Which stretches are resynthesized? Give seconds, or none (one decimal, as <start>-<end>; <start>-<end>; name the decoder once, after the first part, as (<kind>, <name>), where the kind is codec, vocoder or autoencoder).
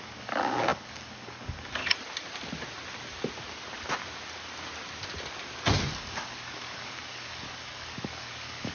0.0-1.8 (codec, DAC); 5.9-8.7